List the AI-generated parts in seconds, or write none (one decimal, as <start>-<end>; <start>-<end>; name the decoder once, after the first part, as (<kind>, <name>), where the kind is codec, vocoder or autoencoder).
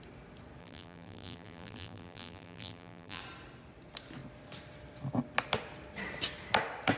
0.6-3.2 (vocoder, BigVGAN v2)